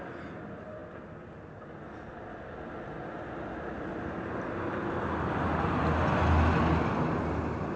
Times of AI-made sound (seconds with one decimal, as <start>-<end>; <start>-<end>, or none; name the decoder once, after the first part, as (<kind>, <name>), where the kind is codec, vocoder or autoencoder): none

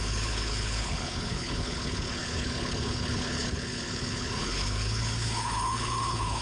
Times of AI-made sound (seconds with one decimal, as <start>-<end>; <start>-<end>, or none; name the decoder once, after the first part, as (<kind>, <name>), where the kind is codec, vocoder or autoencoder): 0.0-6.4 (codec, HILCodec)

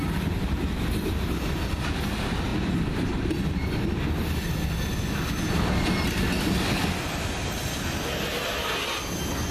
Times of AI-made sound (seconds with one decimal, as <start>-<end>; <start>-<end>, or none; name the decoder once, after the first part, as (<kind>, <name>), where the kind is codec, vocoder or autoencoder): none

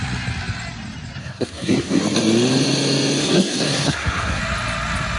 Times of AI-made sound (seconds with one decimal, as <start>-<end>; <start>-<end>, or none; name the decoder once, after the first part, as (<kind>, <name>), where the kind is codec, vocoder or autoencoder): 1.2-2.0 (codec, SNAC); 3.2-4.4